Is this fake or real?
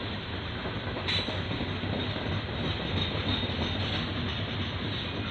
real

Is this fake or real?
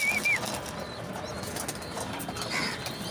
real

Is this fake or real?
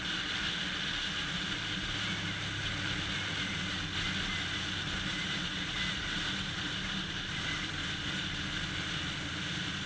real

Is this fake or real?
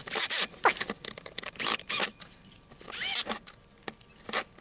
real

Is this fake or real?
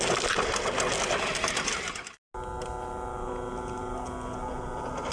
real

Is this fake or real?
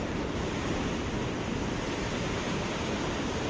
real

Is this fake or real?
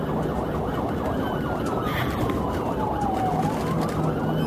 real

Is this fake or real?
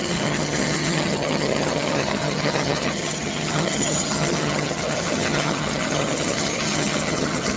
fake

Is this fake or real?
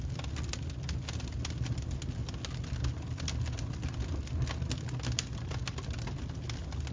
real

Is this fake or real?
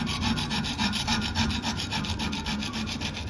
real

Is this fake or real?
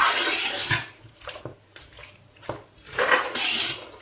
fake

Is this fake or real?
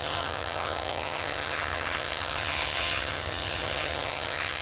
fake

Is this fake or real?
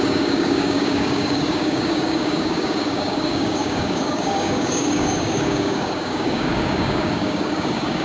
fake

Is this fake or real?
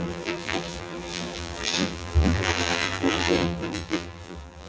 fake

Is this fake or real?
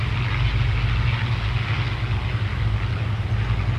real